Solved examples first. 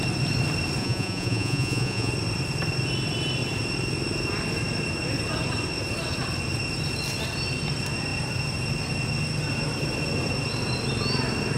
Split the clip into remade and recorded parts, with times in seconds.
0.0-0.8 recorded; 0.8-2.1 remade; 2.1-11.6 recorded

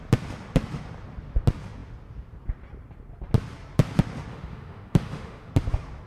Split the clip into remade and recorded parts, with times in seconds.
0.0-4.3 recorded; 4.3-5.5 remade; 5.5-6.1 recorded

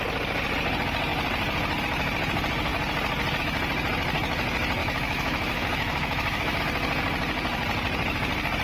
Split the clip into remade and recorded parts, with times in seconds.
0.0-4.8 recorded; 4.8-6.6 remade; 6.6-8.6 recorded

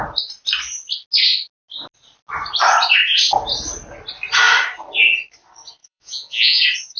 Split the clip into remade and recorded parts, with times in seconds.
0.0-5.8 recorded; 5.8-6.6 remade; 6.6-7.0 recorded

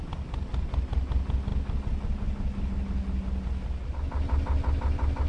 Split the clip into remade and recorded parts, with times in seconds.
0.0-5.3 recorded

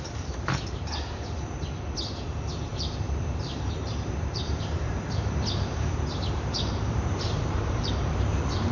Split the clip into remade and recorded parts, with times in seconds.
0.0-2.7 recorded; 2.7-7.9 remade; 7.9-8.7 recorded